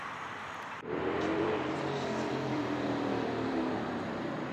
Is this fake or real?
fake